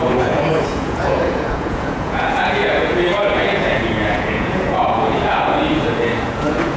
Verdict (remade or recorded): remade